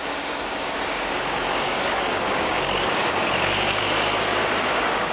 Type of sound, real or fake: fake